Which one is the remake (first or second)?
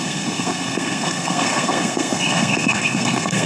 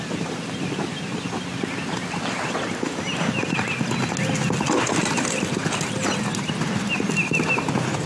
first